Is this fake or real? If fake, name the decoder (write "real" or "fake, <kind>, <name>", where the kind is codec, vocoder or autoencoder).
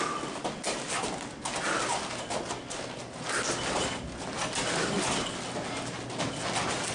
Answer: real